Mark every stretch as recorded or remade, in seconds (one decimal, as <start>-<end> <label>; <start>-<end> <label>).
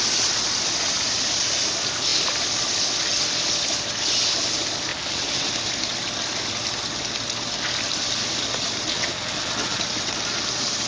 0.0-4.9 recorded; 4.9-5.5 remade; 5.5-8.9 recorded; 8.9-9.8 remade; 9.8-10.9 recorded